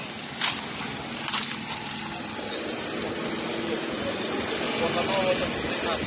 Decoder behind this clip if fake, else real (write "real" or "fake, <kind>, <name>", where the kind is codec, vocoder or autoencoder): real